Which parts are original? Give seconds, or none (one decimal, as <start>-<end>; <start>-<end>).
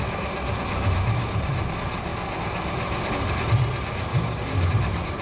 0.0-4.1; 4.7-5.2